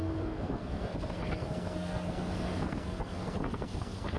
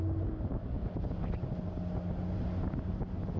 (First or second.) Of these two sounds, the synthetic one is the first